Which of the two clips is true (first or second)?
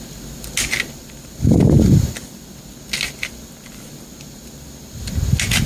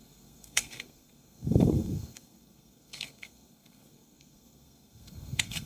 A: first